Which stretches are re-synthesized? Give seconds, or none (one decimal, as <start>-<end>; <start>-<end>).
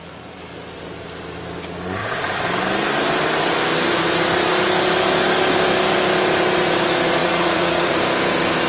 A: 7.2-7.9